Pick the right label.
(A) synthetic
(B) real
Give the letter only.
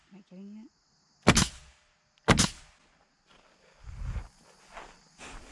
B